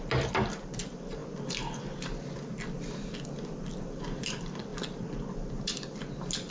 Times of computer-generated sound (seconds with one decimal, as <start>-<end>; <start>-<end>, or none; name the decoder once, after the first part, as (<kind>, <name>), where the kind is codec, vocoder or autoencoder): none